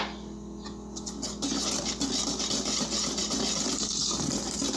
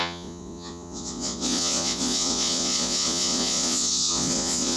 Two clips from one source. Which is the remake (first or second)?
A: second